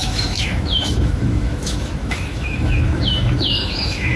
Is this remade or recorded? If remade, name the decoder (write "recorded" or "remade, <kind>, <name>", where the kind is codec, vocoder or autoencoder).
remade, autoencoder, DAC-VAE